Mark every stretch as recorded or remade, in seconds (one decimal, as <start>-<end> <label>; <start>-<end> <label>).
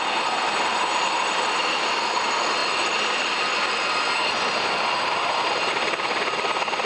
0.0-6.9 recorded